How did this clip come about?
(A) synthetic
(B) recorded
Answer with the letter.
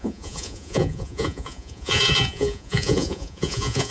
A